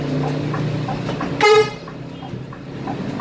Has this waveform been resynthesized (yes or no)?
no